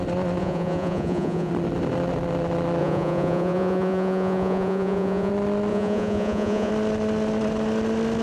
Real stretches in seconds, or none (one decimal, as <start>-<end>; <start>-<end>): 0.0-0.4; 1.5-2.8; 5.3-5.7; 6.7-8.2